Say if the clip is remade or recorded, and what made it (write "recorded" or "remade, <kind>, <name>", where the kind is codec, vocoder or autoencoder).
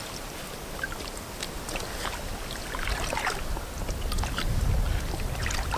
recorded